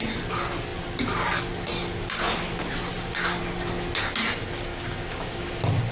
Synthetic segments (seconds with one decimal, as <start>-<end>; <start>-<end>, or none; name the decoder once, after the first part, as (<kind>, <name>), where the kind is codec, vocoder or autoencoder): 4.7-5.5 (codec, DAC)